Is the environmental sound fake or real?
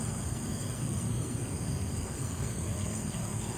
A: fake